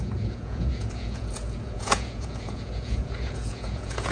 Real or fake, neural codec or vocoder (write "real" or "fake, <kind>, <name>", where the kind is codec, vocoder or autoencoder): fake, vocoder, Vocos